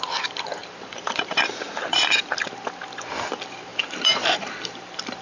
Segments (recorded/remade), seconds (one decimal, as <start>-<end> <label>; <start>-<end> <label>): 0.0-0.6 recorded; 0.6-2.2 remade; 2.2-3.7 recorded; 3.7-5.2 remade